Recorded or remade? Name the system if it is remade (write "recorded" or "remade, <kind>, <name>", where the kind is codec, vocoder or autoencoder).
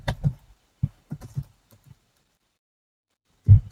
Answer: remade, vocoder, BigVGAN v2